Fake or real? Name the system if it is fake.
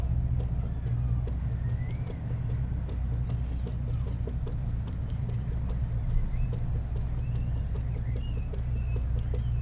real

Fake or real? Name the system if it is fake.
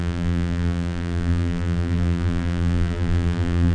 fake, vocoder, BigVGAN v2